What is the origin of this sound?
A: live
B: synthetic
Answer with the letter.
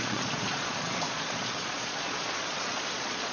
B